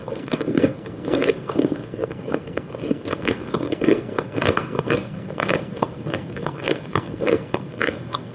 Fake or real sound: fake